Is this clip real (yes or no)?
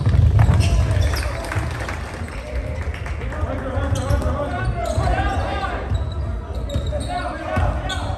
yes